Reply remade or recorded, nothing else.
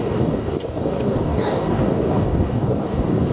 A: remade